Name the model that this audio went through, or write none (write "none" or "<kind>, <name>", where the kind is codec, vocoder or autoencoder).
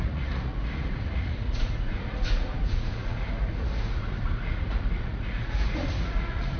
vocoder, Vocos